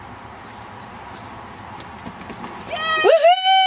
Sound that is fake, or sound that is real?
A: real